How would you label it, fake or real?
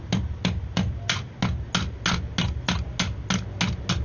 real